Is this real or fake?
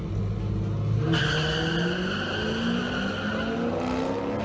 real